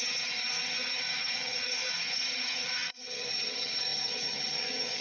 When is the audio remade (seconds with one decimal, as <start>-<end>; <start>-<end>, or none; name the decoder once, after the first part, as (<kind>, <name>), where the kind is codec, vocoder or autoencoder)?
0.0-5.0 (vocoder, HiFi-GAN)